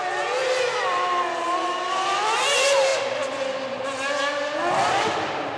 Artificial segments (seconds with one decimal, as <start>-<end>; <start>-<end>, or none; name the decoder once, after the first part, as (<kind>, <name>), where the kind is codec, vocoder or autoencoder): none